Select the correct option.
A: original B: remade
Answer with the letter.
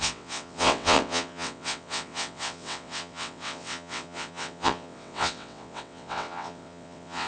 B